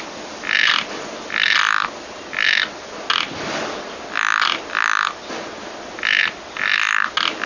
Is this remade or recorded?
recorded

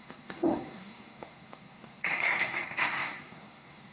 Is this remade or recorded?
remade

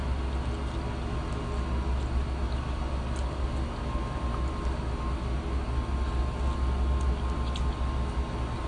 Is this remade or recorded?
recorded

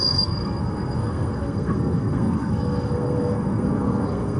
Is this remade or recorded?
remade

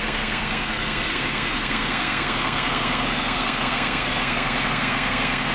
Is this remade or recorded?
remade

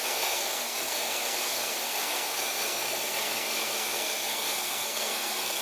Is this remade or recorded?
remade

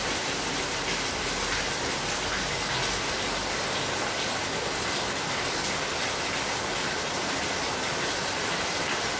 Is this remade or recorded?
recorded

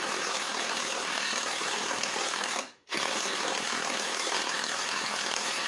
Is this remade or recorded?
remade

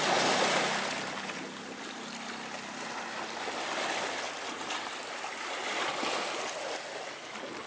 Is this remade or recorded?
recorded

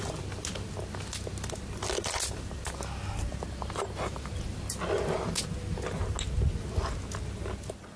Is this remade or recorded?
recorded